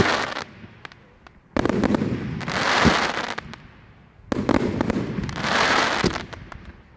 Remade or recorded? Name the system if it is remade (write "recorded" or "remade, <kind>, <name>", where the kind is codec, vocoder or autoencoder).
recorded